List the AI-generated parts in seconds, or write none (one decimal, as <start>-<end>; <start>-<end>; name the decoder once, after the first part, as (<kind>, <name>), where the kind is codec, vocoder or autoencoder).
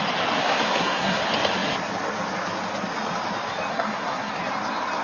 0.4-1.2 (codec, SNAC); 3.7-4.3